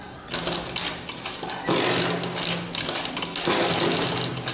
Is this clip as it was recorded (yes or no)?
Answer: yes